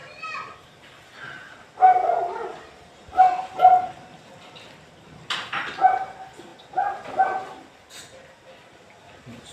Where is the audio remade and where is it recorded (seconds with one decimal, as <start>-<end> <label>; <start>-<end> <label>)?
0.0-9.5 recorded